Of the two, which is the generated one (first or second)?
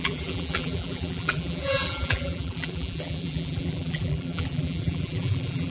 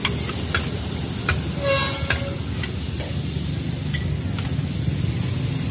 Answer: first